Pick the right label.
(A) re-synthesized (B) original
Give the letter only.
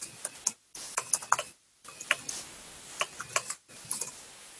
B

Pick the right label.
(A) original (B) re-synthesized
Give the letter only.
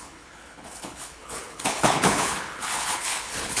B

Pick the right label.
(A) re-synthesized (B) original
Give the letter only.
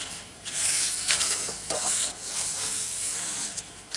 A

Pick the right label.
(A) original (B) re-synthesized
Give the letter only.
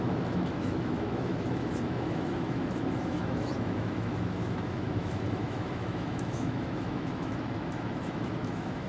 B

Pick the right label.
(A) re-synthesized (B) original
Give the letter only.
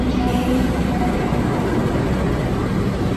B